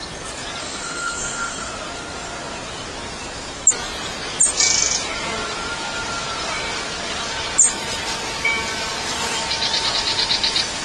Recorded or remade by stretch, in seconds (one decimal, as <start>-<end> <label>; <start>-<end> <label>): 0.0-0.6 recorded; 0.6-1.7 remade; 1.7-10.8 recorded